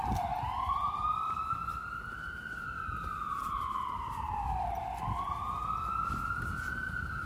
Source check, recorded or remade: recorded